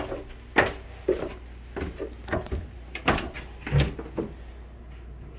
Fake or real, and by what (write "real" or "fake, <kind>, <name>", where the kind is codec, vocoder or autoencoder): real